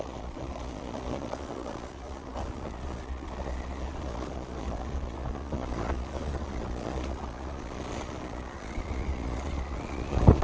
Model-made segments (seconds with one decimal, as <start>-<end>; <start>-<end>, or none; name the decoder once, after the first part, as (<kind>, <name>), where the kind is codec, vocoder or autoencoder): 0.0-10.4 (vocoder, Vocos)